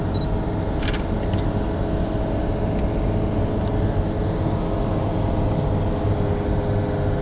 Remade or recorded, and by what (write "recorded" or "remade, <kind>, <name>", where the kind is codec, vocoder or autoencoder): recorded